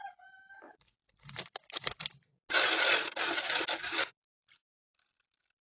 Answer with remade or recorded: recorded